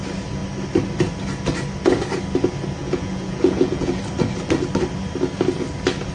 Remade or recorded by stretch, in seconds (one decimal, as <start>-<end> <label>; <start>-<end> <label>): 0.0-2.8 recorded; 2.8-4.0 remade; 4.0-6.1 recorded